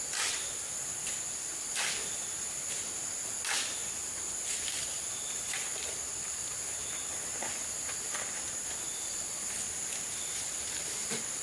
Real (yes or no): yes